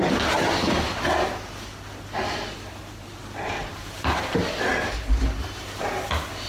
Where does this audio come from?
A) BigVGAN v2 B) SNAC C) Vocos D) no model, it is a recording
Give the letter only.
D